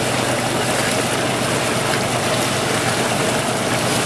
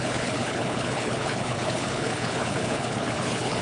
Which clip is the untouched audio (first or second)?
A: first